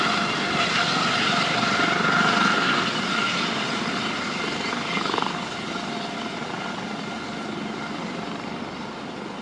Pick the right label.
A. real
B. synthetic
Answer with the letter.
A